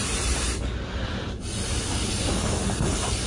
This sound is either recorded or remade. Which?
remade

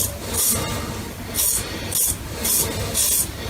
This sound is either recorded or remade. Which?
recorded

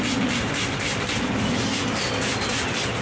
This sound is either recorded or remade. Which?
recorded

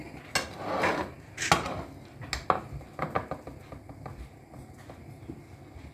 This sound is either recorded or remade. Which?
recorded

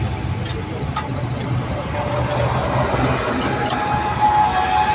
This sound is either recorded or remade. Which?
recorded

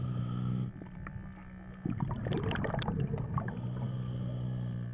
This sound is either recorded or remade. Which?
recorded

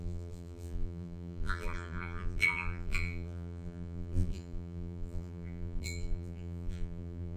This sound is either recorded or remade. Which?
remade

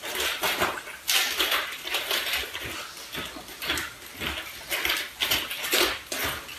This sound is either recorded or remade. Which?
recorded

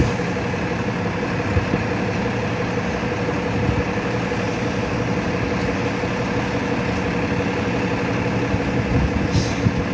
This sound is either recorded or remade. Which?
recorded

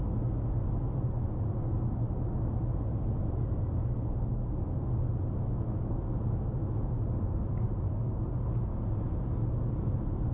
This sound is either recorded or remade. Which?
recorded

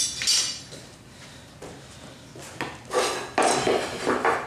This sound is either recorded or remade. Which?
recorded